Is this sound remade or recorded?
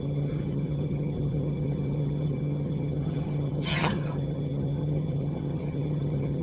remade